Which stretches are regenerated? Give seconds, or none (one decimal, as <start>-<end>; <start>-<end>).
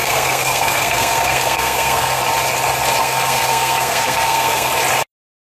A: 0.0-2.2; 3.0-4.7